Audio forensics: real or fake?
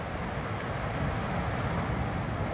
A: real